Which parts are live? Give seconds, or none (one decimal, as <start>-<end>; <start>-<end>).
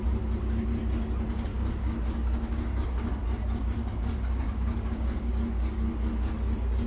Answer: 0.0-1.5; 3.2-3.8; 5.3-6.9